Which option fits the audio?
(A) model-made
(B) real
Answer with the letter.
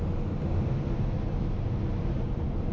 B